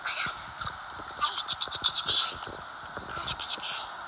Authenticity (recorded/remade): recorded